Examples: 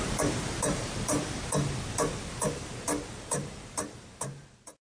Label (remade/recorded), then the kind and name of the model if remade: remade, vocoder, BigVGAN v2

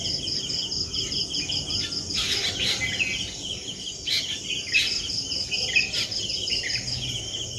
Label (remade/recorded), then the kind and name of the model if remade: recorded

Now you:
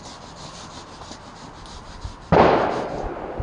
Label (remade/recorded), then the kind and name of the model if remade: recorded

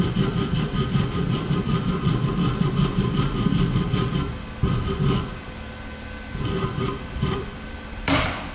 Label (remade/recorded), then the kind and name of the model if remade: remade, vocoder, BigVGAN v2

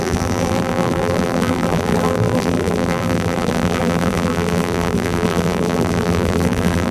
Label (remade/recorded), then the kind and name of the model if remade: remade, vocoder, BigVGAN v2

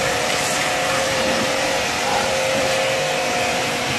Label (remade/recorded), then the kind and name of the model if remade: remade, vocoder, BigVGAN v2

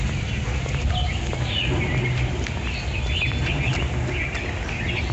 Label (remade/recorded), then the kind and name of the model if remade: recorded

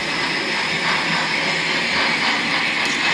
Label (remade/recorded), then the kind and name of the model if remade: recorded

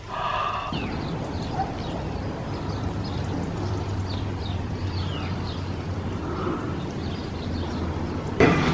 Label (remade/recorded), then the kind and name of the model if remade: remade, vocoder, BigVGAN v2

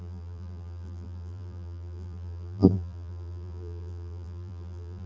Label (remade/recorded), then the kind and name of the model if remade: remade, vocoder, BigVGAN v2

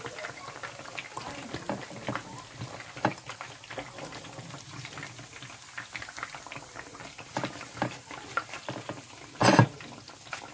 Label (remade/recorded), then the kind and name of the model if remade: recorded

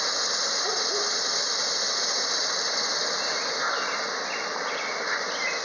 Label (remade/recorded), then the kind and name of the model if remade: recorded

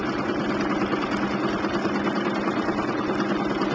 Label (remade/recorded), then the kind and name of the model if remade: recorded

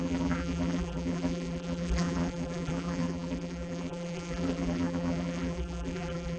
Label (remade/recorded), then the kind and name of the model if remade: remade, vocoder, BigVGAN v2